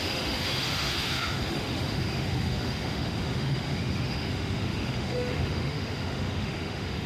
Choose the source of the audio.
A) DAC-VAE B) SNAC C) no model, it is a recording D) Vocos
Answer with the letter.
A